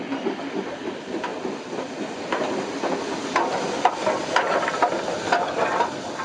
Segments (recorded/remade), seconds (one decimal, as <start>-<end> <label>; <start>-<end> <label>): 0.0-1.3 recorded; 1.3-4.6 remade; 4.6-6.2 recorded